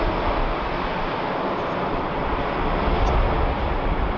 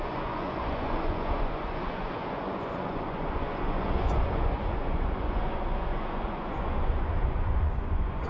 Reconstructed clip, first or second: second